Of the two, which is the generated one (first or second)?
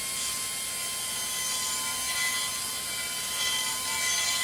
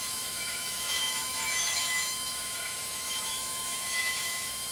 second